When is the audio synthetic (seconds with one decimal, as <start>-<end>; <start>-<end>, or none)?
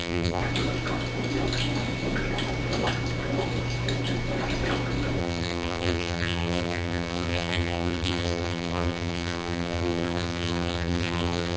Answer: 0.0-0.4; 5.2-11.6